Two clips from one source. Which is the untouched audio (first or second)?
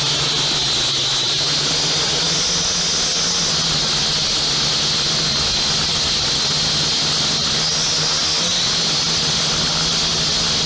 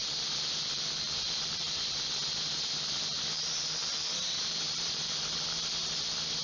first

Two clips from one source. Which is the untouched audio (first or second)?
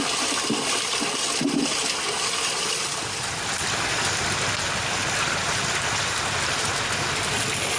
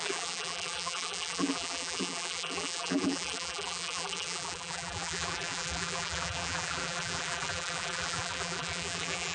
first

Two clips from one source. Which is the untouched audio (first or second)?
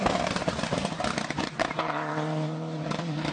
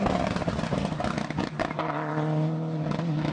second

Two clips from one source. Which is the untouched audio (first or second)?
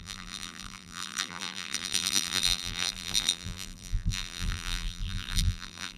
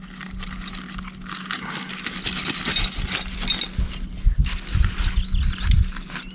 second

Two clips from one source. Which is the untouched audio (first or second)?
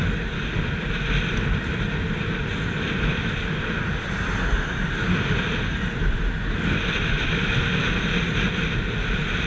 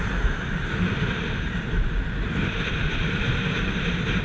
first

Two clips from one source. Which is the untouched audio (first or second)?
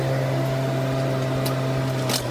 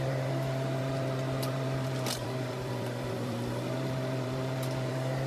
first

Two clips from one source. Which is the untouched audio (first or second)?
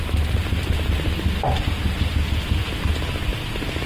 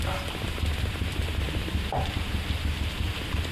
first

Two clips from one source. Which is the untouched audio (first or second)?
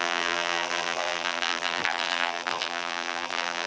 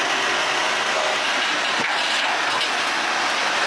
second